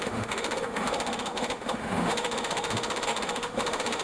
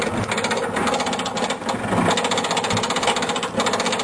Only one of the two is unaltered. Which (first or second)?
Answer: second